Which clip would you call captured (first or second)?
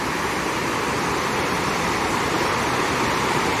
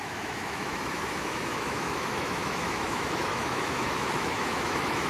first